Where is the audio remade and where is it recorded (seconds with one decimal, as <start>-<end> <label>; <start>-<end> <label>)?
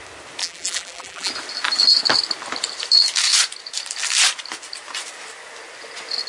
0.0-0.4 recorded; 0.4-1.3 remade; 1.3-6.3 recorded